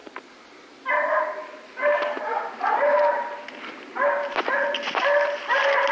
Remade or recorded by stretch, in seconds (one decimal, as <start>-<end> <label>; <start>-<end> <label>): 0.0-5.9 recorded